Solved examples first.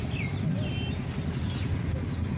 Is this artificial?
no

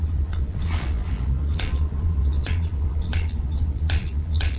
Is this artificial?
yes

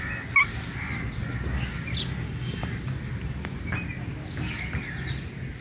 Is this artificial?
no